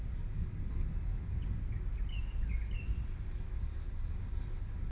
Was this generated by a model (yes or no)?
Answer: no